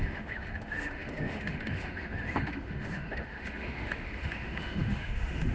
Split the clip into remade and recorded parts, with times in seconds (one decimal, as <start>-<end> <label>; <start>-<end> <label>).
0.0-5.5 remade